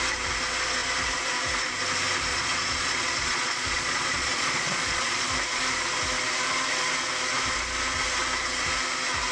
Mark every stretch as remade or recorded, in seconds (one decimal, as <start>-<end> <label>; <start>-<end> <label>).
0.0-2.3 recorded; 2.3-5.3 remade; 5.3-9.3 recorded